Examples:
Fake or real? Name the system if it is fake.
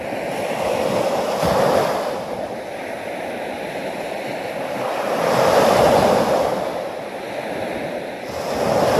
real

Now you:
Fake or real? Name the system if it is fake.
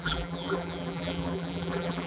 fake, vocoder, BigVGAN v2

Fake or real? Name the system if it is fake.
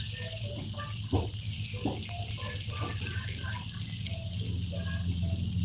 real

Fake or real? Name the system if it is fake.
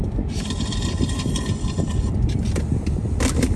fake, vocoder, BigVGAN v2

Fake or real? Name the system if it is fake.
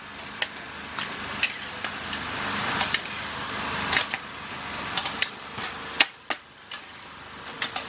real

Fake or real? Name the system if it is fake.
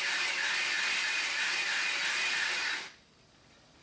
real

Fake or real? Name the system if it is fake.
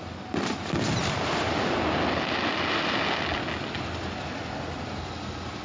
real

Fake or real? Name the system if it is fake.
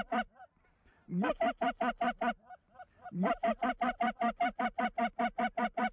real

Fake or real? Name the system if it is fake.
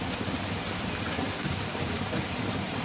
fake, vocoder, BigVGAN v2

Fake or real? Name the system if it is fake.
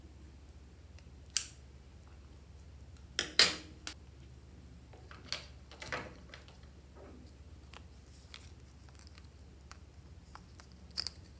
real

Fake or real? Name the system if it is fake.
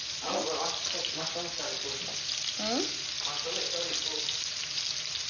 real